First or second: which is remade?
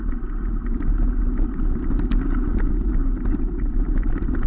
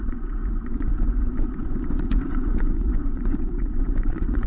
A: second